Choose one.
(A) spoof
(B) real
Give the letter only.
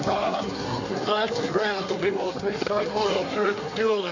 A